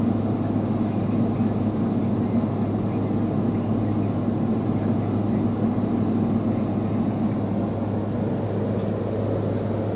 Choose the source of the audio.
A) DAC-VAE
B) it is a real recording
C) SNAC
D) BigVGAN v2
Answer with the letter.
B